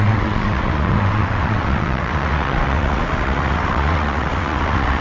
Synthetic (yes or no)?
yes